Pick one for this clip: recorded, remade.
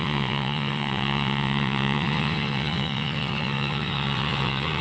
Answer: remade